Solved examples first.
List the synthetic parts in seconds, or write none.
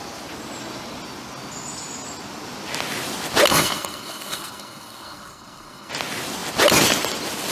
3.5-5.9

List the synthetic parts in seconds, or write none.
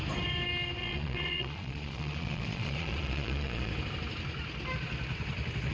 0.8-3.7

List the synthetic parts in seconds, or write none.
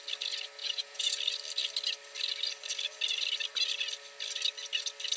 0.6-1.2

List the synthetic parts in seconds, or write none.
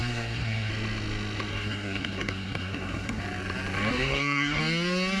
0.0-0.7; 1.5-3.2; 3.9-4.6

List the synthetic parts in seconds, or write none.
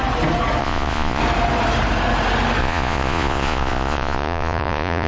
0.6-1.2; 2.6-5.1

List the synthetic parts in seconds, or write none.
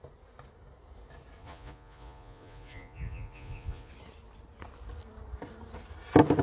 1.4-3.9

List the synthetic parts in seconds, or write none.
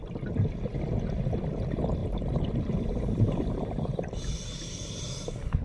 1.5-5.6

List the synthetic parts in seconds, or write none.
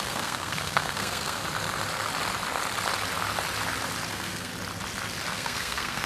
0.0-1.4; 4.1-4.5; 5.3-6.1